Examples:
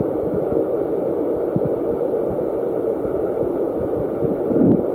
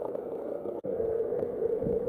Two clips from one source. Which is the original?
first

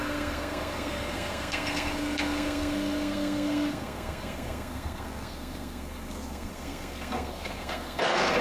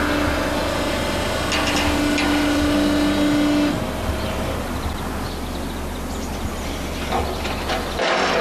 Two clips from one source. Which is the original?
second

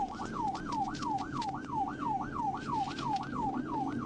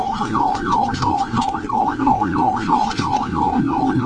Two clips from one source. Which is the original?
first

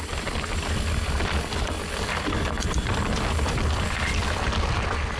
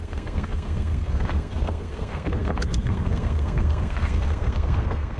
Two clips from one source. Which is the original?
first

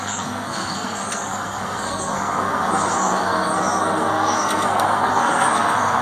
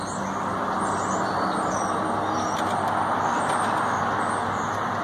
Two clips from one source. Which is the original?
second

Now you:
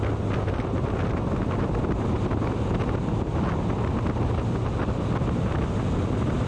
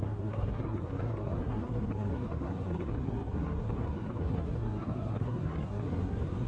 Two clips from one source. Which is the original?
first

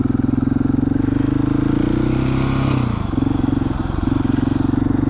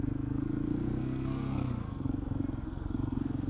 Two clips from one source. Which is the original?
first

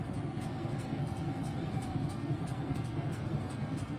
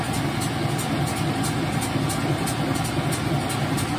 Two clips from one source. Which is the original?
second